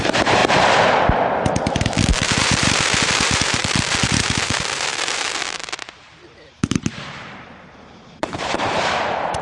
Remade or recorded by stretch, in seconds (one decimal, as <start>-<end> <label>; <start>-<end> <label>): 0.0-0.4 remade; 0.4-2.1 recorded; 2.1-9.4 remade